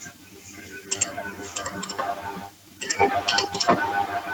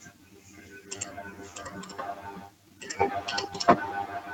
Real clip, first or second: second